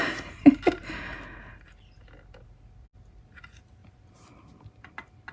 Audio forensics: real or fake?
real